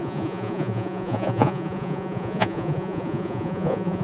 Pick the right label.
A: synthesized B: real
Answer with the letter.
A